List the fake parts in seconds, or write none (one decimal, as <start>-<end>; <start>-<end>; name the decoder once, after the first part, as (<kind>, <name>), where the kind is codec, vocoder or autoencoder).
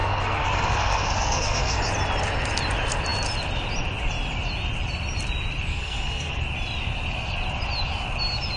0.0-1.8 (codec, SNAC); 5.7-6.4